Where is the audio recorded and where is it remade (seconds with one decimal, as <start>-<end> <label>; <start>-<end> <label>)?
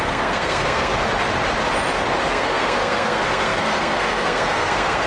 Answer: 0.0-0.9 remade; 0.9-2.3 recorded; 2.3-5.1 remade